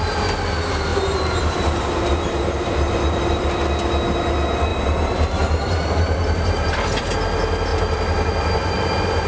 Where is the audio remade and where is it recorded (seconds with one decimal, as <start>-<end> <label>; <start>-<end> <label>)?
0.0-0.9 recorded; 0.9-3.6 remade; 3.6-4.7 recorded; 4.7-7.1 remade; 7.1-7.7 recorded; 7.7-9.3 remade